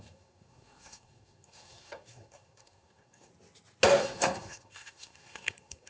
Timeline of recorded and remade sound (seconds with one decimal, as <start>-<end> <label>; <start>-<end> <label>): 0.0-3.3 remade; 3.3-4.0 recorded; 4.0-5.9 remade